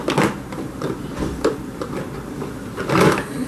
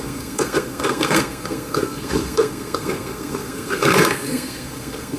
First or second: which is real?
first